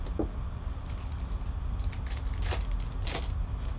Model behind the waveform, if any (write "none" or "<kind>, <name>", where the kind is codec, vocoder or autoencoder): none